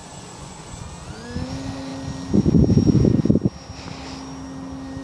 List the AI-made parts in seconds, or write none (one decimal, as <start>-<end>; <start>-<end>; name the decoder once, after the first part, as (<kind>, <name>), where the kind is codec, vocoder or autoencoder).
0.0-0.9 (vocoder, Vocos)